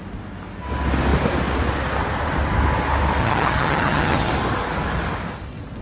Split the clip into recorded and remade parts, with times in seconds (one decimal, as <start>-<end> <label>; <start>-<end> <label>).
0.0-3.2 recorded; 3.2-4.3 remade; 4.3-5.8 recorded